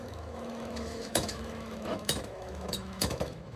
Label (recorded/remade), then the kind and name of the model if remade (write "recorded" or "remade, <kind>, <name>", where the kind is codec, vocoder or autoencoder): remade, autoencoder, DAC-VAE